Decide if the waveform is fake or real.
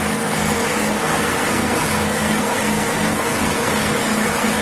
fake